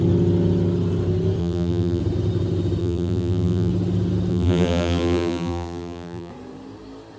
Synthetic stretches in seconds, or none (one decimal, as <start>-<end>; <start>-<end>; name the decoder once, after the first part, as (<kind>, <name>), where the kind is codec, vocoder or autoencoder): 1.4-2.0 (vocoder, BigVGAN v2); 2.8-3.7; 4.3-6.3